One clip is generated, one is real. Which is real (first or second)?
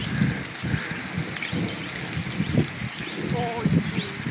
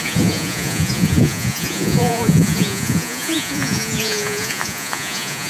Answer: first